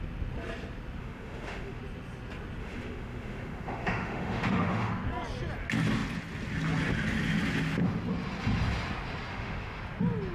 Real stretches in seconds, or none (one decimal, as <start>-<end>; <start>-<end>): 0.0-1.0; 1.8-2.6; 4.9-9.3; 9.8-10.3

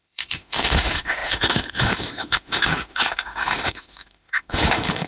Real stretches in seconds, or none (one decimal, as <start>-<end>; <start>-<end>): none

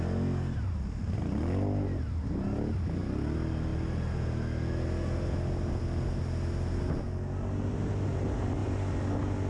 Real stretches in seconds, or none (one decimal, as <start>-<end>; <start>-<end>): 0.0-9.5

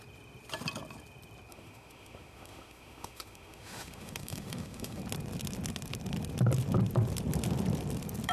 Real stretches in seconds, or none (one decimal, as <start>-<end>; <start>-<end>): 0.0-1.5; 5.0-8.3

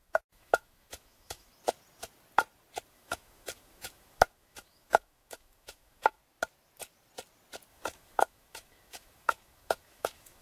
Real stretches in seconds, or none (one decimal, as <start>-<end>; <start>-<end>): 1.5-2.9; 6.2-7.7

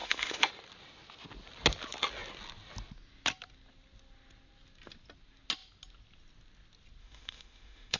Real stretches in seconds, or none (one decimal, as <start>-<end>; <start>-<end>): 0.5-7.0

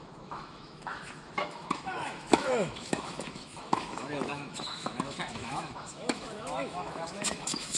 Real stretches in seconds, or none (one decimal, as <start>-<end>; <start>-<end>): none

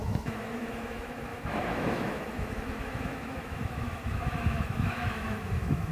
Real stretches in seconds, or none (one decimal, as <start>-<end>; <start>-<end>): none